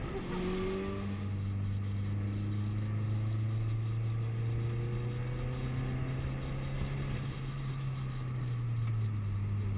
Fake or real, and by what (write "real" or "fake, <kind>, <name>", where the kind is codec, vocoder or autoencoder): real